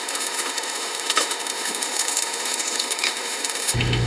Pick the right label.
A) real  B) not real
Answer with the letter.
B